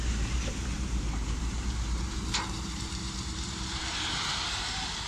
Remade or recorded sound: remade